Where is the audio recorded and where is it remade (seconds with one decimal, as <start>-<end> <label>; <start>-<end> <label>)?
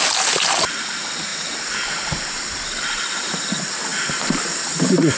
0.0-5.2 recorded